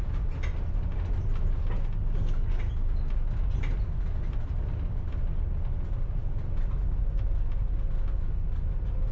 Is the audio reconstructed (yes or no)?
no